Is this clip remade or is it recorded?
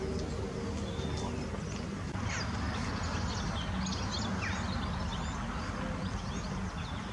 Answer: recorded